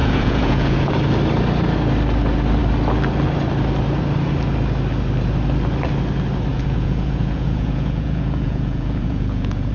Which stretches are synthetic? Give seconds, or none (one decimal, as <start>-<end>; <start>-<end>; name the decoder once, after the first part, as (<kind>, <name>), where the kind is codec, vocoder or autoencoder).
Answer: 0.0-0.9 (vocoder, Vocos); 6.5-9.7